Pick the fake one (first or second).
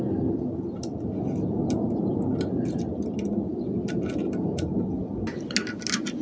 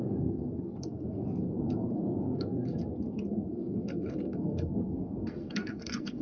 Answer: second